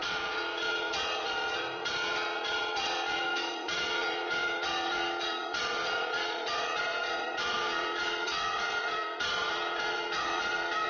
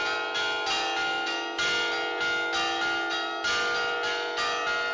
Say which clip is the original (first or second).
second